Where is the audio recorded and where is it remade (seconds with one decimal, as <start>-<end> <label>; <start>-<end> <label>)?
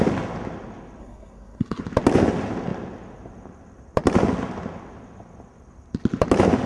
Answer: 0.0-1.0 recorded; 1.0-1.8 remade; 1.8-6.7 recorded